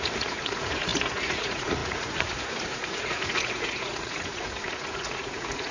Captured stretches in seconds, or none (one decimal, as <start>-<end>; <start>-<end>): none